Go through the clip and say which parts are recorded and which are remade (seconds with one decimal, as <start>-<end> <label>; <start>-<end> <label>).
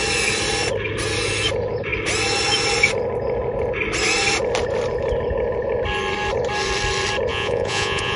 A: 0.0-7.3 recorded; 7.3-8.2 remade